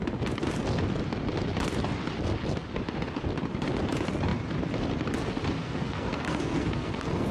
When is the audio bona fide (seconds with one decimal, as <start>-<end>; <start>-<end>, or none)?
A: 0.0-5.6